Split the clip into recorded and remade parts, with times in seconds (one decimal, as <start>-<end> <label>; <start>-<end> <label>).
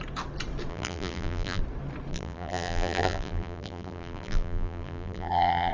0.0-0.7 recorded; 0.7-1.6 remade; 1.6-2.1 recorded; 2.1-5.7 remade